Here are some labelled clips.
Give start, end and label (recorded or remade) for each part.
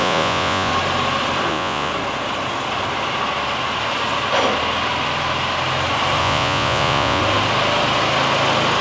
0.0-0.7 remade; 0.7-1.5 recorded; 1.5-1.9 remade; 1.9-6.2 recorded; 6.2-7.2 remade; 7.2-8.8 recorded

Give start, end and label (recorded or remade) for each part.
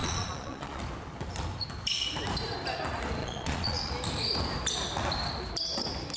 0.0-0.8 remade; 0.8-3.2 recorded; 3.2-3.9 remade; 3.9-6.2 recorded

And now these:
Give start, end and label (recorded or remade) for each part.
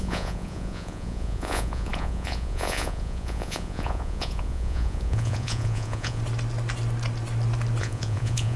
0.0-6.2 remade; 6.2-7.8 recorded; 7.8-8.6 remade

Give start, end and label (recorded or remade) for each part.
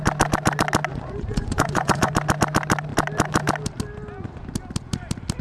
0.0-0.9 recorded; 0.9-2.1 remade; 2.1-5.4 recorded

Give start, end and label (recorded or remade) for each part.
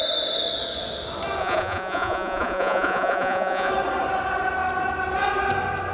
0.0-1.4 recorded; 1.4-3.7 remade; 3.7-5.9 recorded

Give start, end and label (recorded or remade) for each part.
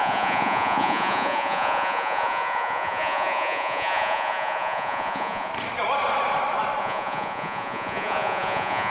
0.0-5.5 remade; 5.5-6.8 recorded; 6.8-8.9 remade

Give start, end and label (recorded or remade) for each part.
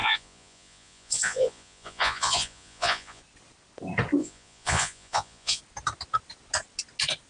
0.0-3.2 remade; 3.2-4.2 recorded; 4.2-5.6 remade; 5.6-7.3 recorded